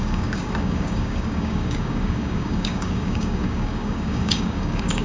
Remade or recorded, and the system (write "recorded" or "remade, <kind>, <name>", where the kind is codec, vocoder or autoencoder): remade, codec, DAC